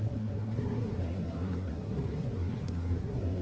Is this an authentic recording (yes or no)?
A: no